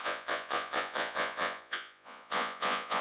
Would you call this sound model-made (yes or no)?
yes